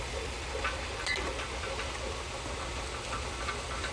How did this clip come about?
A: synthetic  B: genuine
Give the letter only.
B